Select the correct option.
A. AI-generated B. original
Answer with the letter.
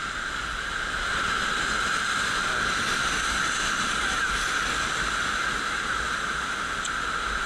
B